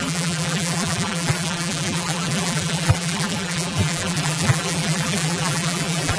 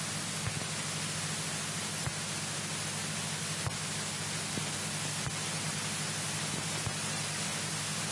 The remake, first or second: first